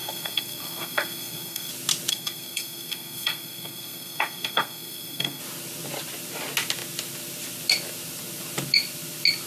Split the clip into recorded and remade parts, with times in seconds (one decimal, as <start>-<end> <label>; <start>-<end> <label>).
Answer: 0.0-1.7 remade; 1.7-2.1 recorded; 2.1-5.4 remade; 5.4-9.5 recorded